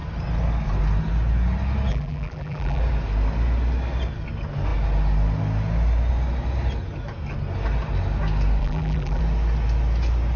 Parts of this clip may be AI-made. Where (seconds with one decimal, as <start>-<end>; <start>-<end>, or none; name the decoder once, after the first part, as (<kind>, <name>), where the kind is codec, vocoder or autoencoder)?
1.9-2.8 (vocoder, BigVGAN v2); 8.6-9.2